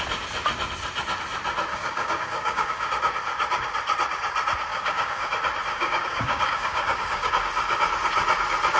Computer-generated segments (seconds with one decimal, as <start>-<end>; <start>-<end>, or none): 1.7-2.9; 4.7-5.3; 5.7-7.3